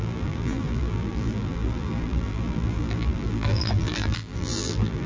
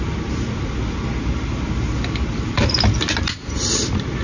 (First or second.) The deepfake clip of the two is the first